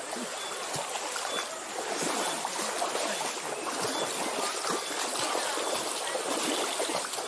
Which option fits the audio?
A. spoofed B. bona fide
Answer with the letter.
B